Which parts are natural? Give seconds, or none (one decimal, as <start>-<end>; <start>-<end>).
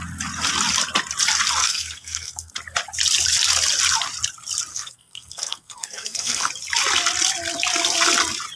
0.0-1.6; 2.5-4.7; 6.5-8.6